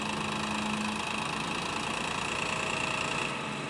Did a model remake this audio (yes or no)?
no